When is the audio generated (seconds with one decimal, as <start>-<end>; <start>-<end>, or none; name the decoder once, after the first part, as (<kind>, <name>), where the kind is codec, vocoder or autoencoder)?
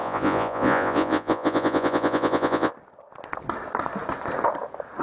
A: 0.0-2.7 (vocoder, Vocos)